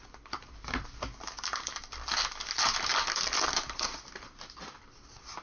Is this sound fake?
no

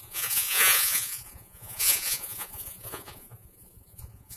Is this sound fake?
yes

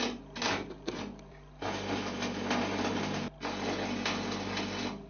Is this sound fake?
no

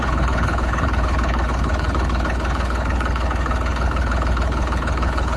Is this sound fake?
yes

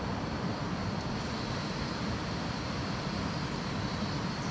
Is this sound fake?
no